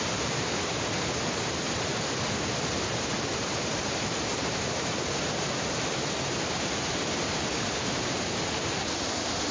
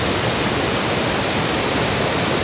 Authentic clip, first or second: second